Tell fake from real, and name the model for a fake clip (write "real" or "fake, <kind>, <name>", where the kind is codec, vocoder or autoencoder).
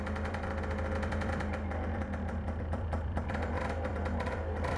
fake, vocoder, BigVGAN v2